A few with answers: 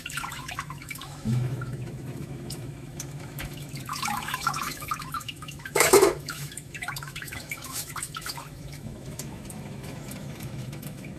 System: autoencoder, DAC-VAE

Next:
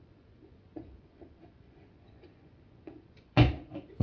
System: vocoder, Vocos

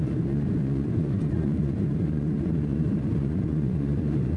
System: vocoder, Vocos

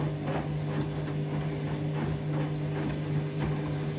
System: none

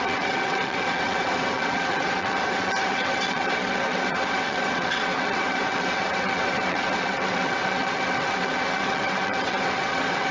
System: vocoder, WaveNeXt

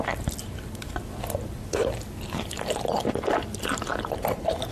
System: none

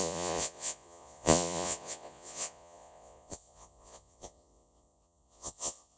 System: vocoder, Vocos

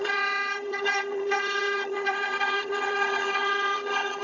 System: vocoder, HiFi-GAN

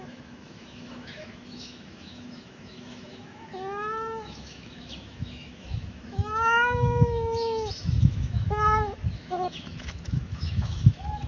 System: autoencoder, DAC-VAE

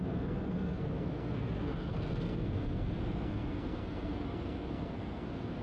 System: codec, SNAC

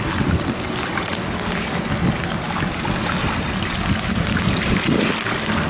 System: none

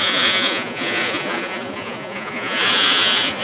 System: vocoder, Vocos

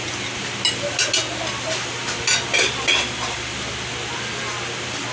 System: none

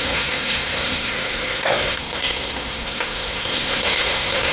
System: codec, SNAC